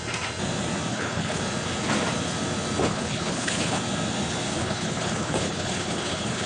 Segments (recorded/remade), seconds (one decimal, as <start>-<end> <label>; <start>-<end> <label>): 0.0-0.9 recorded; 0.9-1.4 remade; 1.4-2.8 recorded; 2.8-3.8 remade; 3.8-4.6 recorded; 4.6-6.5 remade